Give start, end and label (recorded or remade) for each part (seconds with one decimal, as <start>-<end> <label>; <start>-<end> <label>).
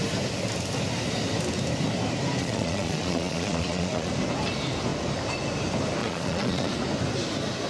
0.0-2.4 recorded; 2.4-4.1 remade; 4.1-6.0 recorded; 6.0-6.7 remade; 6.7-7.7 recorded